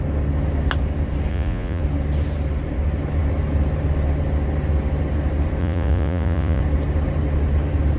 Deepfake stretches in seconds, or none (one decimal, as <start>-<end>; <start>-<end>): 1.3-1.8; 5.6-6.6